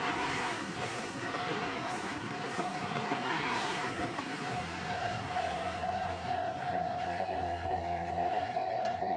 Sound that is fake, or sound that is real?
fake